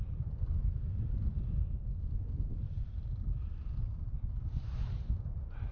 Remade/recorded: recorded